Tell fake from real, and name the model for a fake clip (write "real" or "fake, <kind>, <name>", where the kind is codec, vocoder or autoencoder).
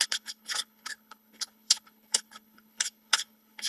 fake, codec, HILCodec